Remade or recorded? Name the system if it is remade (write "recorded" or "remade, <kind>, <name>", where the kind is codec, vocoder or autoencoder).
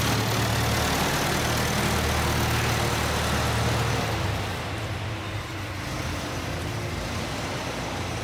recorded